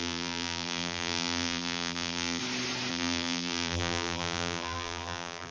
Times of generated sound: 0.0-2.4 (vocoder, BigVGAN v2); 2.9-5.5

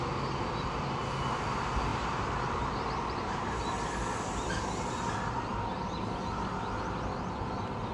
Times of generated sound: 1.9-3.6 (vocoder, BigVGAN v2)

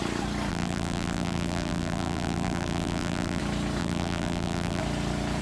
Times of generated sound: 0.5-3.4 (vocoder, BigVGAN v2); 3.8-4.8

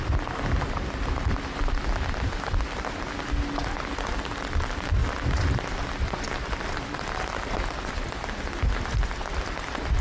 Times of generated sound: none

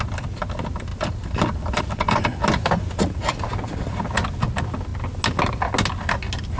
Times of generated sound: 0.9-1.8 (vocoder, BigVGAN v2)

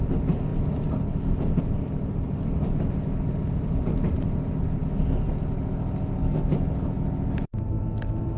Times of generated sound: 0.0-0.5 (vocoder, BigVGAN v2); 1.6-4.8; 7.7-8.4